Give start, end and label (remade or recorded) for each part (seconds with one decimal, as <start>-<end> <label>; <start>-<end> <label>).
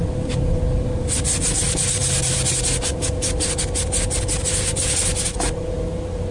0.0-6.3 recorded